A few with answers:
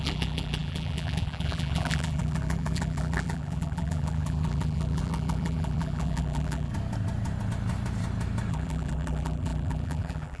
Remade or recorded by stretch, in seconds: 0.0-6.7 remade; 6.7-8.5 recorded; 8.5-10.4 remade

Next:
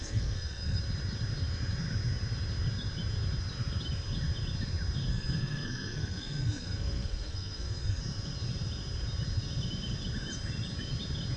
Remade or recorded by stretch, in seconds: 0.0-0.8 remade; 0.8-5.1 recorded; 5.1-8.0 remade; 8.0-11.4 recorded

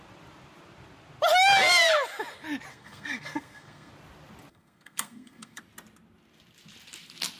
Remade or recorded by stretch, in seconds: 0.0-2.7 recorded; 2.7-3.9 remade; 3.9-4.5 recorded; 4.5-5.6 remade; 5.6-7.4 recorded

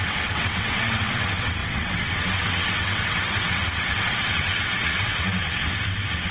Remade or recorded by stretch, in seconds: 0.0-6.3 remade

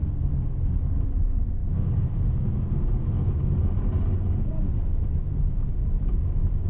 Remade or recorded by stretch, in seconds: 0.0-1.6 remade; 1.6-5.6 recorded; 5.6-6.7 remade

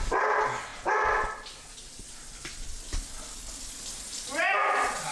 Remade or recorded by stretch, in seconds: 0.0-5.1 recorded